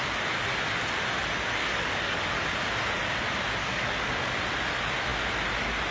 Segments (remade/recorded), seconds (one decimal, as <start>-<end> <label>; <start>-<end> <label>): 0.0-1.6 recorded; 1.6-2.2 remade; 2.2-3.6 recorded; 3.6-4.4 remade; 4.4-5.9 recorded